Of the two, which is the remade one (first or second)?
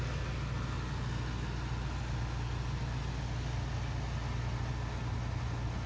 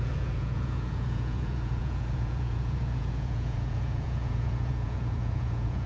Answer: second